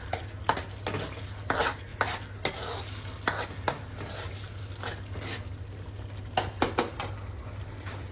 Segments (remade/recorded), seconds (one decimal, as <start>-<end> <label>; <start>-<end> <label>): 0.0-8.1 recorded